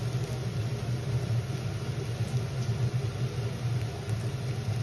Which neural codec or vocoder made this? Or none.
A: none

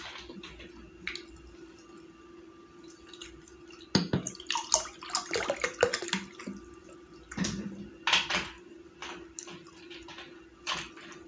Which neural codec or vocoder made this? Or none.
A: none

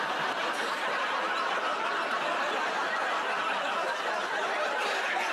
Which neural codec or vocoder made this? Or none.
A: none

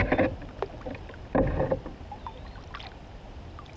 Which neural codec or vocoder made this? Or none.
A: none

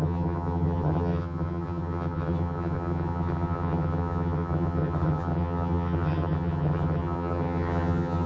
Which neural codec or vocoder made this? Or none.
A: vocoder, HiFi-GAN